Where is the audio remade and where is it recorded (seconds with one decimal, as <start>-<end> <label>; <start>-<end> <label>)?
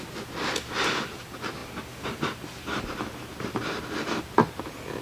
0.0-5.0 recorded